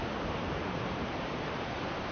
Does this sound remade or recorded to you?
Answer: remade